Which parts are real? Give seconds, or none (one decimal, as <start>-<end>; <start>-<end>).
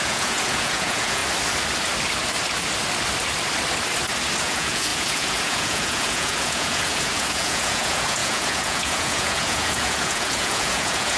1.2-4.4